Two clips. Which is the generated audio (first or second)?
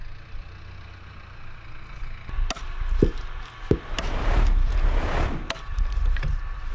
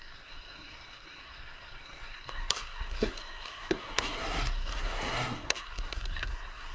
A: second